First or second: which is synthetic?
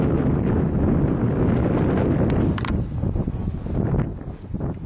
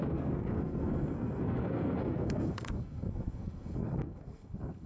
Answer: second